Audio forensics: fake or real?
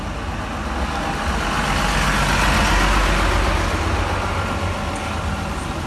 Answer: real